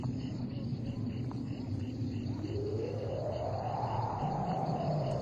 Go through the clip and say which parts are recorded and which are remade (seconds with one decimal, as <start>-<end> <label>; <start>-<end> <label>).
0.0-2.6 recorded; 2.6-3.1 remade; 3.1-5.2 recorded